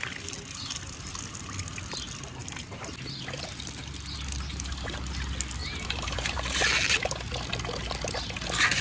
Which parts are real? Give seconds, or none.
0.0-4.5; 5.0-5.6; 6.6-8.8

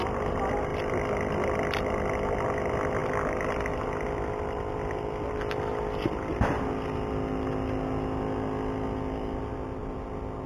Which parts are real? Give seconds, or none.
0.0-10.5